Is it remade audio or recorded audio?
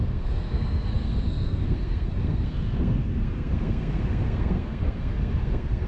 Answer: remade